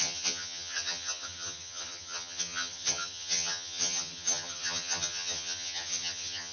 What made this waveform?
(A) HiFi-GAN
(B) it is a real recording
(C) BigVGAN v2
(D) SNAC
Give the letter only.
A